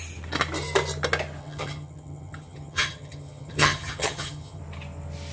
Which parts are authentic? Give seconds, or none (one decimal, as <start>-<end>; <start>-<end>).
0.0-1.4; 4.6-5.3